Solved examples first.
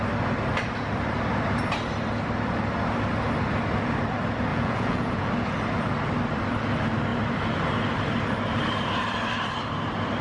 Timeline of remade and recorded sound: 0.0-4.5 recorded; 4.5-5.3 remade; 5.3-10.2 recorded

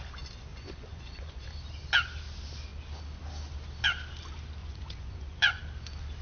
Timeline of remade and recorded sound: 0.0-0.5 recorded; 0.5-1.4 remade; 1.4-4.6 recorded; 4.6-5.6 remade; 5.6-6.2 recorded

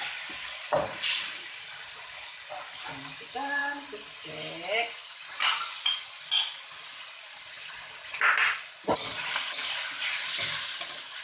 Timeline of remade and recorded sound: 0.0-11.2 recorded